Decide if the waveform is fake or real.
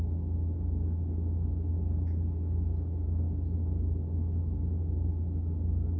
real